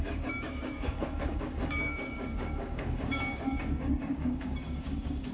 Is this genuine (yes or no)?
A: no